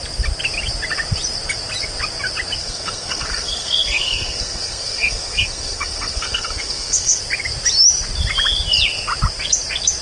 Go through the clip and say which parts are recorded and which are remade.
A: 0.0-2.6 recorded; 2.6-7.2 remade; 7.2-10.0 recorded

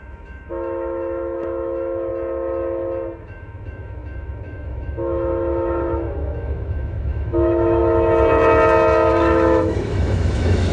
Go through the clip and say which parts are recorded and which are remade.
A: 0.0-2.1 remade; 2.1-3.2 recorded; 3.2-7.8 remade; 7.8-9.1 recorded; 9.1-10.7 remade